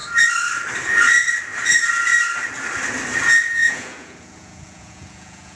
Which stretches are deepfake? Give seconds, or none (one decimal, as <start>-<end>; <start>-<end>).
3.6-5.6